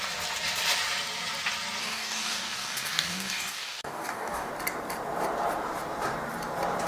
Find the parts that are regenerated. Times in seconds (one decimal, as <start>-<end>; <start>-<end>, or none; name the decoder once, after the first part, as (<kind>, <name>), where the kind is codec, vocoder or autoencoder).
1.8-4.5 (codec, DAC)